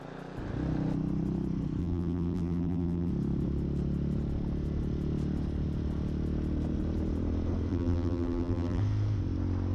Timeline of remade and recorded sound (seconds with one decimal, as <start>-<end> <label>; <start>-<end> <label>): 0.0-1.8 recorded; 1.8-3.1 remade; 3.1-7.7 recorded; 7.7-8.8 remade; 8.8-9.7 recorded